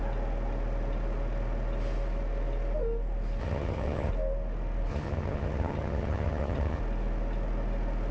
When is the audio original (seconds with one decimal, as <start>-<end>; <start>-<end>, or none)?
0.0-3.4; 4.1-4.9; 6.8-8.1